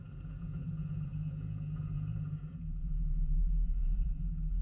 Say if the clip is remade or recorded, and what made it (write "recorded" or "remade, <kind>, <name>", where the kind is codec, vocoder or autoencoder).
remade, vocoder, Vocos